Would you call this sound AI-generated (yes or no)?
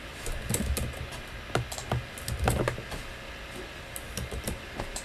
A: no